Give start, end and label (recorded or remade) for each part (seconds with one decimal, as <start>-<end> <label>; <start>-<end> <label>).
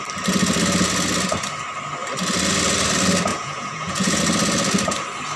0.0-3.3 recorded; 3.3-4.2 remade; 4.2-5.4 recorded